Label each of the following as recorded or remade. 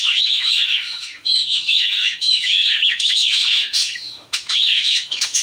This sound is remade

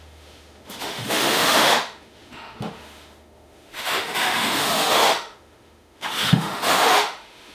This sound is remade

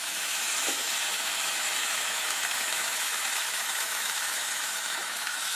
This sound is remade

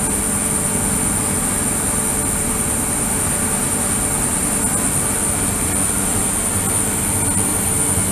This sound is recorded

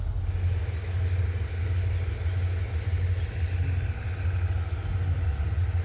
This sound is recorded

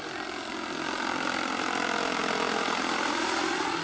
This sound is recorded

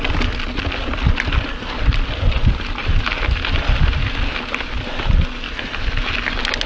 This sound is recorded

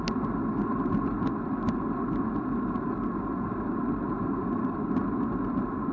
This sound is recorded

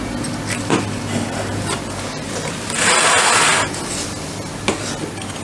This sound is recorded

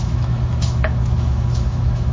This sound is remade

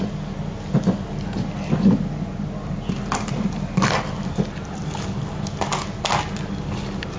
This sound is recorded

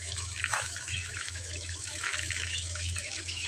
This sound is remade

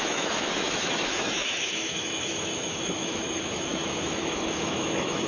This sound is remade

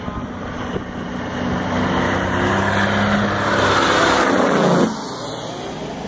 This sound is recorded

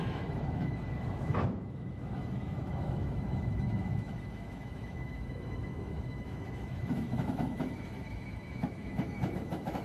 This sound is remade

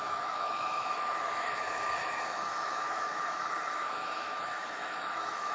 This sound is remade